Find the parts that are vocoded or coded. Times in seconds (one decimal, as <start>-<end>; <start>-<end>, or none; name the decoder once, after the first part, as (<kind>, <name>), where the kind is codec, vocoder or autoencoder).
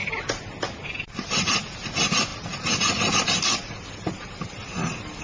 2.3-5.2 (vocoder, BigVGAN v2)